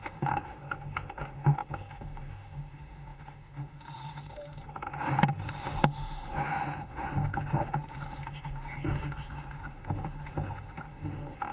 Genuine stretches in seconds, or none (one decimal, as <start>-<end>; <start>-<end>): none